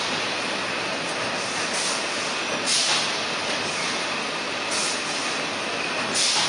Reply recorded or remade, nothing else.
recorded